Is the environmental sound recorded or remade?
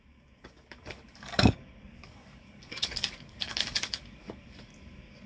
remade